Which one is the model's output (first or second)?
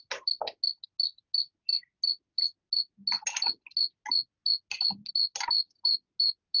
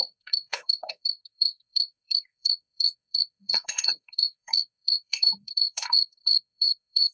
second